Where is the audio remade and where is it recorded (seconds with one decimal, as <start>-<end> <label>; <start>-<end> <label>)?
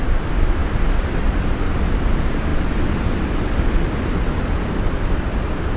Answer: 0.0-0.6 recorded; 0.6-1.2 remade; 1.2-2.5 recorded; 2.5-4.9 remade; 4.9-5.8 recorded